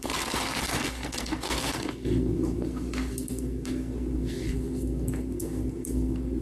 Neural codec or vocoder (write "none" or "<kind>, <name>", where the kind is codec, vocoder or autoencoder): codec, SNAC